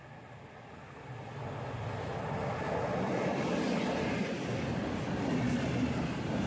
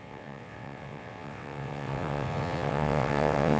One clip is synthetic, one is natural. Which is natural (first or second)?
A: first